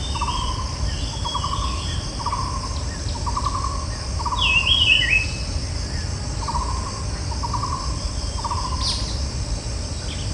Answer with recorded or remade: recorded